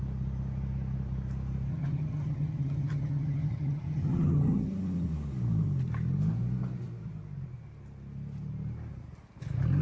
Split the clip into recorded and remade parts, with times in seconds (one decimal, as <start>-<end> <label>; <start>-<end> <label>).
0.0-1.7 recorded; 1.7-4.7 remade; 4.7-9.8 recorded